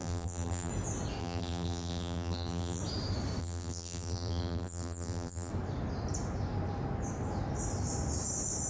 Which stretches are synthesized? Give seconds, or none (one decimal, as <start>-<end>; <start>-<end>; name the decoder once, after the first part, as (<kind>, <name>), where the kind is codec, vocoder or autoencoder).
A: 0.0-0.7 (vocoder, BigVGAN v2); 1.2-2.8; 3.4-5.5

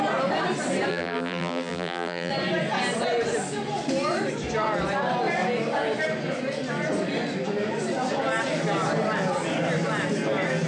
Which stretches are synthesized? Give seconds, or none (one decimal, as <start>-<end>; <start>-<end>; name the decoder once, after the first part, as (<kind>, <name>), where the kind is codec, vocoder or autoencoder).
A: 0.9-2.3 (vocoder, BigVGAN v2)

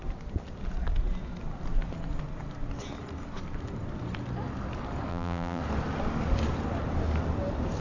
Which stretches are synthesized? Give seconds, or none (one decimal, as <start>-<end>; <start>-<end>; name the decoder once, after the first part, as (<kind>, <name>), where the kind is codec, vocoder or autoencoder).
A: 5.1-5.6 (vocoder, BigVGAN v2)

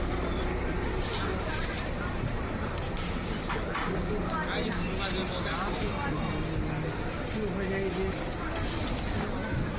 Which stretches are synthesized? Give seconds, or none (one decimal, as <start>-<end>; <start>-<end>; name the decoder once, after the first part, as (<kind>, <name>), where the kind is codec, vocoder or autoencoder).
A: 1.3-3.7 (vocoder, BigVGAN v2); 5.2-5.9

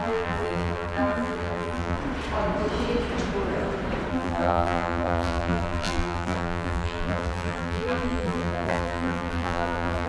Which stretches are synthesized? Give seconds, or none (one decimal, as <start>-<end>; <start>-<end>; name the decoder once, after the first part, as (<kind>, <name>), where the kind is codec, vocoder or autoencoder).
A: 0.0-2.0 (vocoder, BigVGAN v2); 4.1-10.1